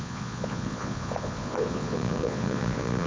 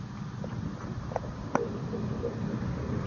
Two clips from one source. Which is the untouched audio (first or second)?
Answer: second